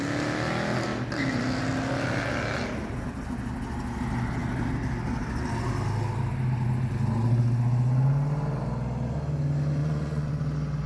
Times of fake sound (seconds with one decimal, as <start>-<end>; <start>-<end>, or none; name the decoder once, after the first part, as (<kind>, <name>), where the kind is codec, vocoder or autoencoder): 9.8-10.4 (vocoder, Vocos)